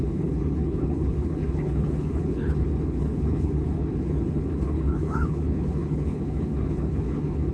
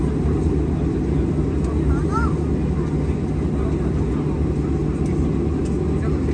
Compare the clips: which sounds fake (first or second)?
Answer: first